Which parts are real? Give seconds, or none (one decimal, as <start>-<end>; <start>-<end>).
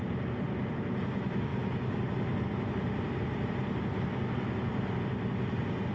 0.0-5.9